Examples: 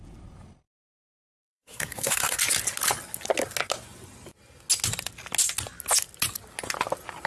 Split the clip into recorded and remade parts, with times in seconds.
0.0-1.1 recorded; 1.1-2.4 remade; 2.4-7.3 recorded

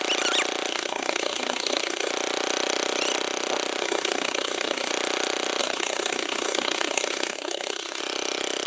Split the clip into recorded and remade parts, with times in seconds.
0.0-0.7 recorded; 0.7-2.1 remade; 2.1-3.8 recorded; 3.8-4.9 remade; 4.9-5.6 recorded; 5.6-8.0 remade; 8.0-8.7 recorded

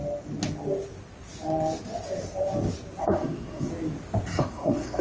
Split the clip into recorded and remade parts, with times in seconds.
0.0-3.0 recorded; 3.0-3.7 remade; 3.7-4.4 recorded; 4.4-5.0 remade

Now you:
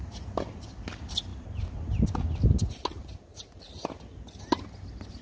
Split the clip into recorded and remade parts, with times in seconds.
0.0-5.2 recorded

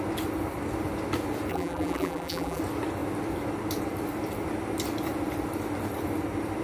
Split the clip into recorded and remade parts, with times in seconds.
0.0-1.5 recorded; 1.5-2.6 remade; 2.6-6.6 recorded

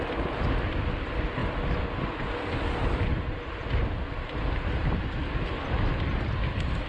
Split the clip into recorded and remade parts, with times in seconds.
0.0-6.9 recorded